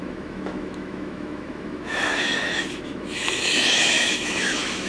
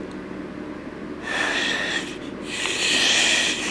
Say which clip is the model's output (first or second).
first